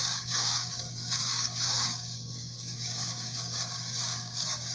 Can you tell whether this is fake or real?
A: fake